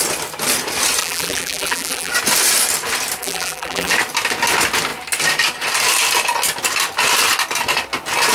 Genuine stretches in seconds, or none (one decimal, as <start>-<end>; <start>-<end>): 0.0-1.0; 2.1-3.2; 3.9-8.3